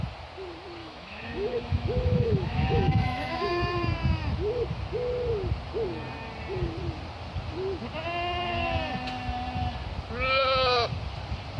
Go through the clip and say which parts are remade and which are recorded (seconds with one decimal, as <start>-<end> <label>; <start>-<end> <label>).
0.0-0.8 recorded; 0.8-3.5 remade; 3.5-11.6 recorded